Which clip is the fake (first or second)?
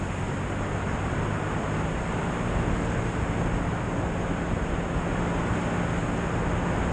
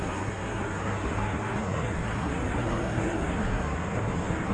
second